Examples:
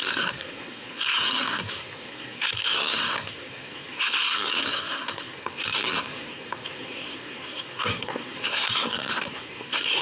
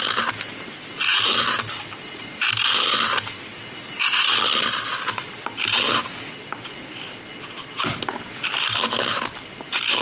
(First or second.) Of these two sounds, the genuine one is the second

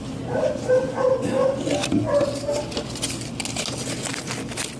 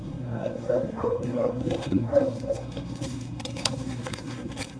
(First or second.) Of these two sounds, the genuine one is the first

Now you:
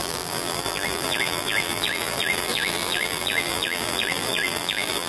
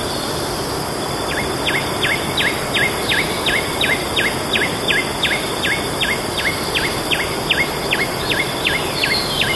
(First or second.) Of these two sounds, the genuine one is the second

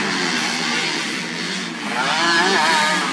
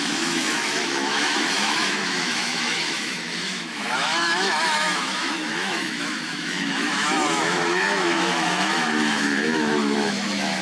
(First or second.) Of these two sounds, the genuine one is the first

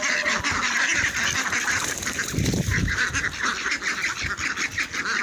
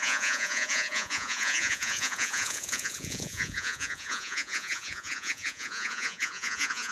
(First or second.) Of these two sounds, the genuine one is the first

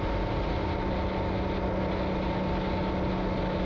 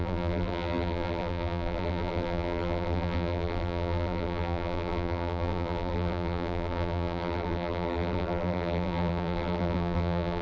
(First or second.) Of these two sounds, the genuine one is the first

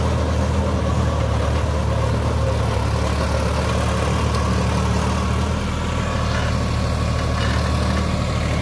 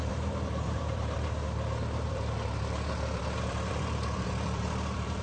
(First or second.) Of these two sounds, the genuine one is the first